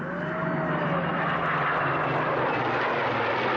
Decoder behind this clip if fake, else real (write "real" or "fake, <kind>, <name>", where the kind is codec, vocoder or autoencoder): real